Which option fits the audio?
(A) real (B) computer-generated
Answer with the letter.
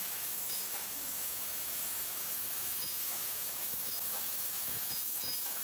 B